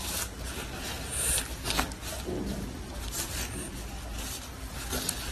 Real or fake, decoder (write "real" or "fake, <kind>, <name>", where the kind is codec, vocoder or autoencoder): real